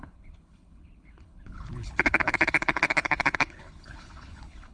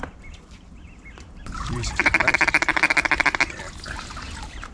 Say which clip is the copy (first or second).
first